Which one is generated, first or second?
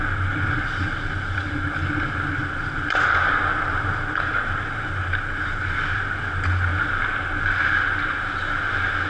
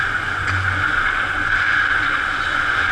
second